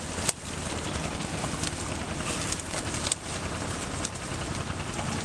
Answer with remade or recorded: recorded